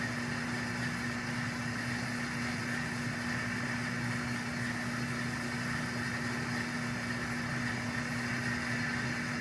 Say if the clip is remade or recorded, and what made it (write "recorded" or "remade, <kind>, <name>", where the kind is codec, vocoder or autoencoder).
recorded